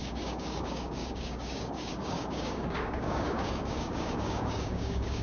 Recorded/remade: remade